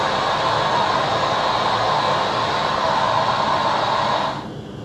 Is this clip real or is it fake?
real